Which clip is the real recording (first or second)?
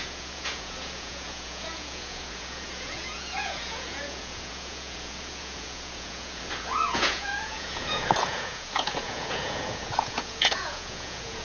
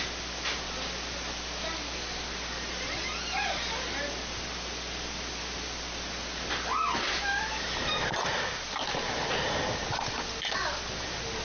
second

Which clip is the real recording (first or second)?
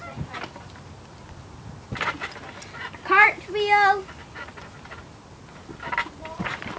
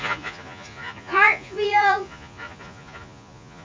first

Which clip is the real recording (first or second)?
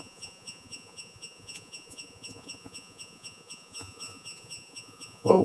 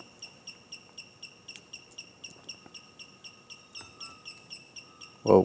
second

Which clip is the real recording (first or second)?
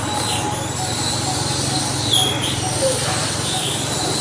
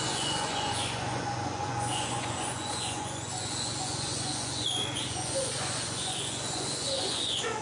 first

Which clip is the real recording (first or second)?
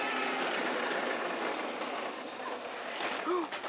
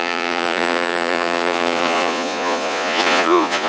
first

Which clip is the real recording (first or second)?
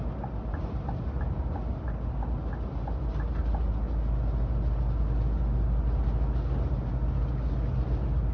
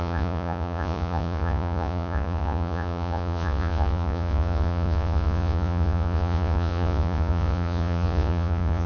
first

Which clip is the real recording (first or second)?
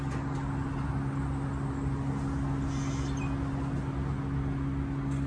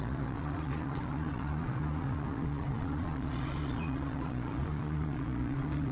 first